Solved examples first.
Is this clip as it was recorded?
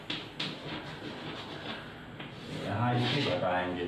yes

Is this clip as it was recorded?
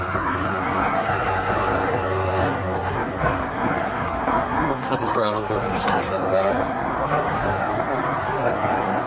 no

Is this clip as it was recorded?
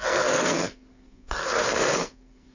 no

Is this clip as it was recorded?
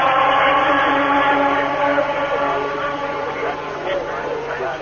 no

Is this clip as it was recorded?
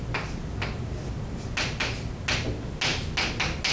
yes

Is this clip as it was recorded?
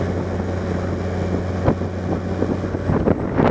yes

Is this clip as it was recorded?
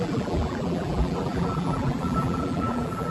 no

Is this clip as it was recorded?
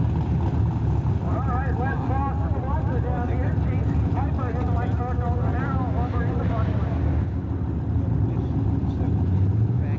yes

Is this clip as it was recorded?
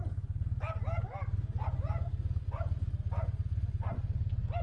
yes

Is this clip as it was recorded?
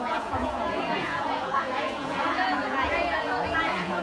no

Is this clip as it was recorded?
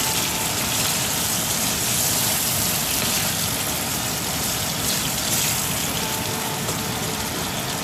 yes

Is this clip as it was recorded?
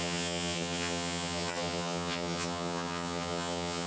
no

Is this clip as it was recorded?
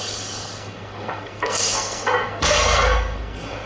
no